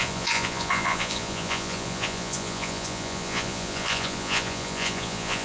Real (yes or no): no